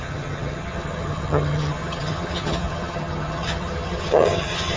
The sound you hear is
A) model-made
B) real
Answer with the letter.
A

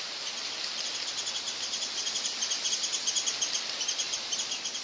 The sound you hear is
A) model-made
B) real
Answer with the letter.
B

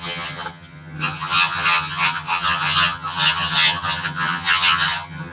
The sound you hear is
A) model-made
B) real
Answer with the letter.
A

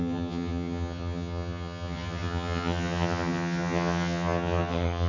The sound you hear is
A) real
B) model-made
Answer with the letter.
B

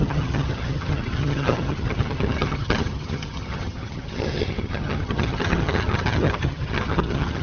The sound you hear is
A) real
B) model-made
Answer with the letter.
B